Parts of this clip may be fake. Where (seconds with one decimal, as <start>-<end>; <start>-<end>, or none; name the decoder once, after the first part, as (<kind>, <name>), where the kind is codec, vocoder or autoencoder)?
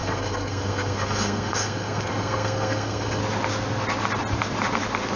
0.0-3.2 (codec, SNAC)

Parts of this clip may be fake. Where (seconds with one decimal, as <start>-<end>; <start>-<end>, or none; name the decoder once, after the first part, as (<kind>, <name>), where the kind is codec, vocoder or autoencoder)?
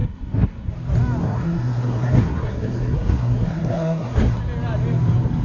0.0-0.7 (codec, SNAC); 1.2-4.4